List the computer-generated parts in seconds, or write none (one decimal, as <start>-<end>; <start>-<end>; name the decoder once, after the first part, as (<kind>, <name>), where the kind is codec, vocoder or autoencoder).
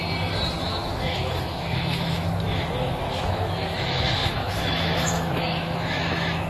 0.6-6.5 (autoencoder, DAC-VAE)